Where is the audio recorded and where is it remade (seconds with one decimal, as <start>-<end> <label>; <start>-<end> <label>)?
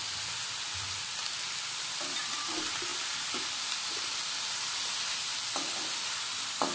0.0-6.7 recorded